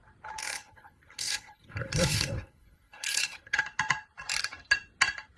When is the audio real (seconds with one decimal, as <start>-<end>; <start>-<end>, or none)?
0.0-0.4; 3.6-5.4